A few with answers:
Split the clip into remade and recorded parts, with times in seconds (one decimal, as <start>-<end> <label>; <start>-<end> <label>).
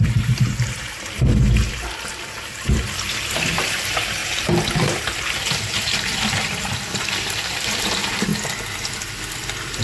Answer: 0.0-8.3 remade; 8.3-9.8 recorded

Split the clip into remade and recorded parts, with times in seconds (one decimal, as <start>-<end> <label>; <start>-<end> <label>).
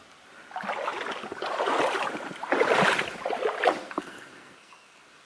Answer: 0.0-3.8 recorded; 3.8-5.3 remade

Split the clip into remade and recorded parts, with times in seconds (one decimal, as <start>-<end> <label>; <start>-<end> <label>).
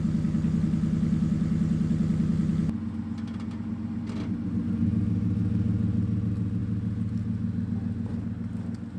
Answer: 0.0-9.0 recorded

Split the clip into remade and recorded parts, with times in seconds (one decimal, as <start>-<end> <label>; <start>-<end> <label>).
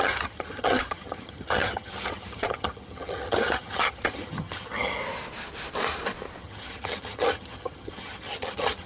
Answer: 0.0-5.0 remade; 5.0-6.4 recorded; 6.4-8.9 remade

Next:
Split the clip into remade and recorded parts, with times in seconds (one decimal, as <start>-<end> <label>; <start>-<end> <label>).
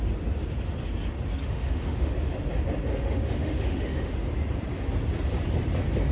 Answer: 0.0-1.4 recorded; 1.4-2.1 remade; 2.1-2.9 recorded; 2.9-4.1 remade; 4.1-6.1 recorded